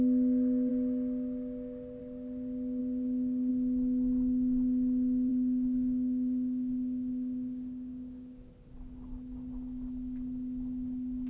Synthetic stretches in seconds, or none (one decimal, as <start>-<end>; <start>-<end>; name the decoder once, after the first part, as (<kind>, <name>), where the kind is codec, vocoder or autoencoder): 2.8-3.5 (codec, DAC); 5.3-8.5